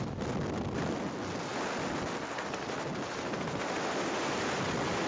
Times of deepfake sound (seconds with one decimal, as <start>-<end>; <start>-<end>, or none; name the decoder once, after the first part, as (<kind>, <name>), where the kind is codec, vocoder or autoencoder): none